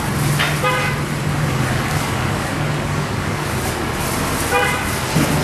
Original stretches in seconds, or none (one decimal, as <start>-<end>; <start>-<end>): 0.0-1.3; 3.9-5.4